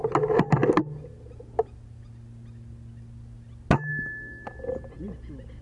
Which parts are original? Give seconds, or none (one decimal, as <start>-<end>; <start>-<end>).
0.0-5.6